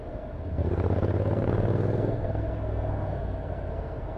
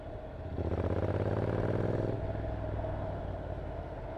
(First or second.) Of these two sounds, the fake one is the first